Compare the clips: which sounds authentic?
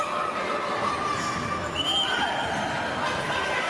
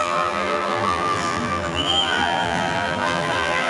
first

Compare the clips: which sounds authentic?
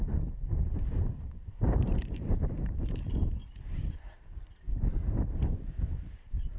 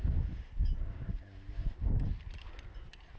second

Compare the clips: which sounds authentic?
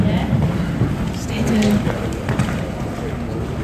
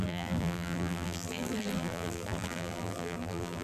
first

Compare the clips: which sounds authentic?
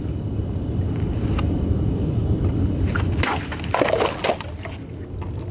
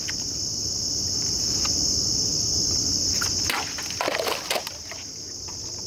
second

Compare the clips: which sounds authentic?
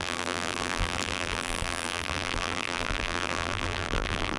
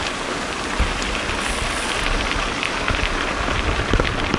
second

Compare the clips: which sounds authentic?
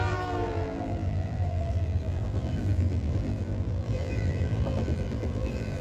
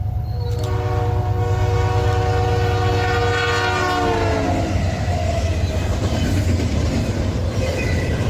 second